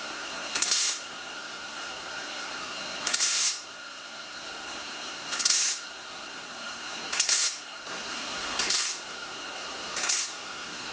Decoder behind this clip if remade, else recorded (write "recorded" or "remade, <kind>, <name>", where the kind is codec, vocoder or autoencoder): remade, codec, SNAC